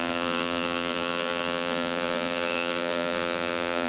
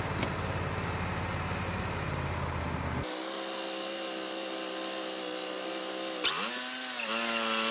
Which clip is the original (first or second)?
second